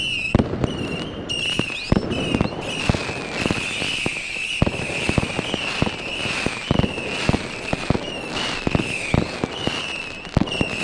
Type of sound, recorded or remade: recorded